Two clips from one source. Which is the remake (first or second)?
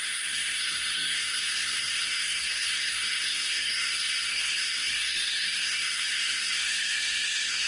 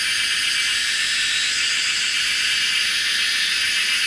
first